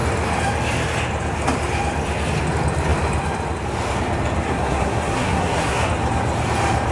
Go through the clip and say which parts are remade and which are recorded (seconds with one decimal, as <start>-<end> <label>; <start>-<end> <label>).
0.0-4.4 recorded; 4.4-5.9 remade; 5.9-6.9 recorded